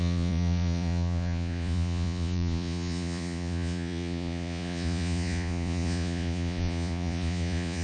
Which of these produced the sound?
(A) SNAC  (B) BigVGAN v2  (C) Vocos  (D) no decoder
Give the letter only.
C